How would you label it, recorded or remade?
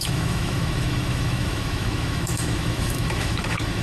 remade